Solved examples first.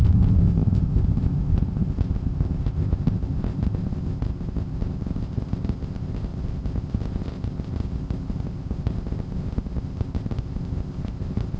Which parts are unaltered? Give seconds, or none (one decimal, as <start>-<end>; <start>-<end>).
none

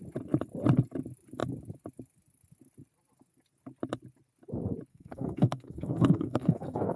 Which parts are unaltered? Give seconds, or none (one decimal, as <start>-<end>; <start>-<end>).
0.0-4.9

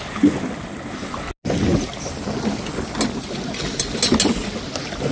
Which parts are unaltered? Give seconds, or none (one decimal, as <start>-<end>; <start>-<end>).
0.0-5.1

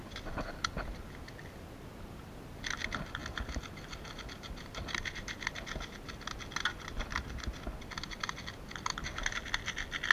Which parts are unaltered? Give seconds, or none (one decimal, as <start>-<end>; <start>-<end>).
0.0-10.1

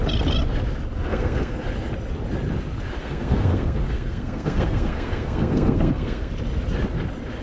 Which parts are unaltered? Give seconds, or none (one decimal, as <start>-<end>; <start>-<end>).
0.0-1.1; 1.6-3.0; 6.3-7.4

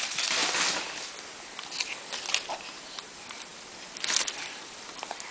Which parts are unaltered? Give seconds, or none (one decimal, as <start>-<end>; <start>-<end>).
0.4-2.3

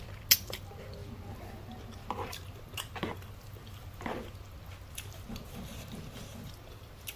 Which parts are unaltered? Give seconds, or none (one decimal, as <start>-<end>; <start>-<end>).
0.0-7.2